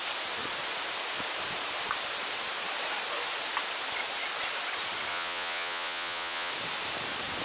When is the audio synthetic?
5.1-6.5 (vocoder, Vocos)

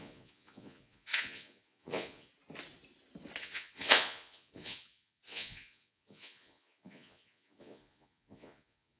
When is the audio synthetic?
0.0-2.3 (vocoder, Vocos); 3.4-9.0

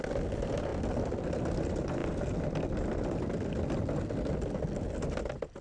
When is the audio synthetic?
none

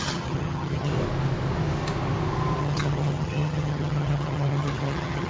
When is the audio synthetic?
0.0-0.9 (vocoder, HiFi-GAN); 2.6-5.3

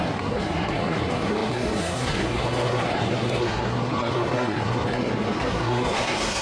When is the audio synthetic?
0.0-6.4 (codec, SNAC)

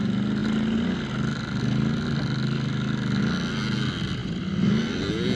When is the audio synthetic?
none